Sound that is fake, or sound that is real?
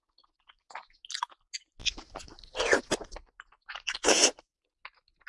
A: real